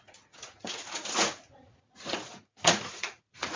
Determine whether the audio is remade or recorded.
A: remade